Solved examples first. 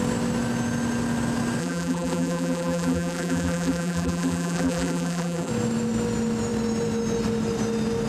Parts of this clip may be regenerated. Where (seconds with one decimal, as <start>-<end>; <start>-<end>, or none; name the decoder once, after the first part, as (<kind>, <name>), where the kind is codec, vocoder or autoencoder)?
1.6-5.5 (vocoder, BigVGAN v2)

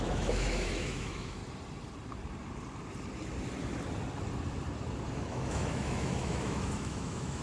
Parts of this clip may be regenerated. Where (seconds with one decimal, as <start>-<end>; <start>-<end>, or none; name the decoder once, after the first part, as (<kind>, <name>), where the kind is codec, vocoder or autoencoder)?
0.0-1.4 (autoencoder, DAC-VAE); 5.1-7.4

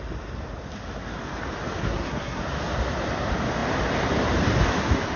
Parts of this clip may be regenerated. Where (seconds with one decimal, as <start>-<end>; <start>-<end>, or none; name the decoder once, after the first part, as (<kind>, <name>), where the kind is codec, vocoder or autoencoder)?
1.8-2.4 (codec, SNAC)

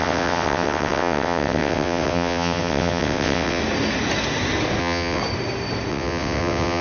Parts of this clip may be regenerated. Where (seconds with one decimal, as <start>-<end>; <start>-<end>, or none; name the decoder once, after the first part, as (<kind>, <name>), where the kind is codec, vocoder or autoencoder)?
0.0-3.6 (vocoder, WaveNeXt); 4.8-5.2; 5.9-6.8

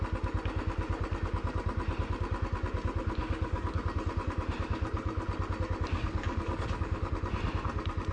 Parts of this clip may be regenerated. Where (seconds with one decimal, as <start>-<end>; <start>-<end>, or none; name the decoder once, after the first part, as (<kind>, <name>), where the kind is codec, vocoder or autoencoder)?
3.2-3.8 (codec, DAC); 5.9-7.1

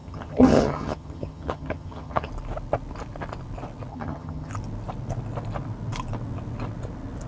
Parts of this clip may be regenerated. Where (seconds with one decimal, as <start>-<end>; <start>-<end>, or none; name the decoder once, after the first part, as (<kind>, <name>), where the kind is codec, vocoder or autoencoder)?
0.0-2.3 (vocoder, HiFi-GAN); 3.9-4.5